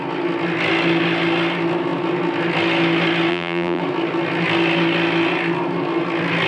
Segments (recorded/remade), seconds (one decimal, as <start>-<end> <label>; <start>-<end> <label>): 0.0-3.3 recorded; 3.3-3.8 remade; 3.8-6.5 recorded